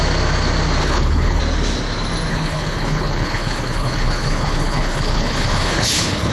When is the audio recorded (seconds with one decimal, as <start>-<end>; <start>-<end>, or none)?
0.0-0.8; 1.4-2.3